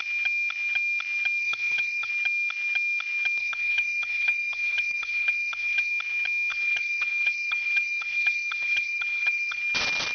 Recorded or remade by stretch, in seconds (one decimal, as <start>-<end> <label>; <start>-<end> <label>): 0.0-1.4 recorded; 1.4-2.1 remade; 2.1-3.4 recorded; 3.4-5.9 remade; 5.9-6.5 recorded; 6.5-9.6 remade; 9.6-10.1 recorded